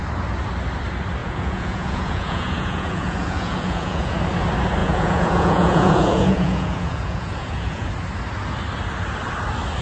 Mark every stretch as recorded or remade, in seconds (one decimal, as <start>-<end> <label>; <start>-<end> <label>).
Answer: 0.0-1.2 recorded; 1.2-4.2 remade; 4.2-4.8 recorded; 4.8-7.9 remade; 7.9-9.8 recorded